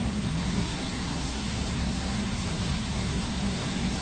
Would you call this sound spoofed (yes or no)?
yes